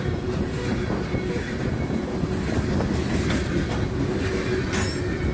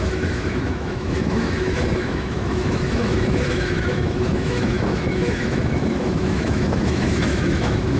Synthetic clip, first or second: second